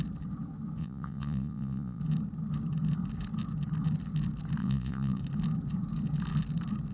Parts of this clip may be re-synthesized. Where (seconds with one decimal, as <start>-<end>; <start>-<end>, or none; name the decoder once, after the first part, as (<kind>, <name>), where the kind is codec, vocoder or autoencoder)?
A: 0.8-2.0 (vocoder, Vocos); 4.6-5.2